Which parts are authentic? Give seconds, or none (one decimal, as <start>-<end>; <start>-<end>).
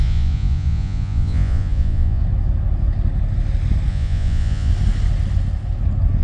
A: 2.2-3.9; 4.7-6.2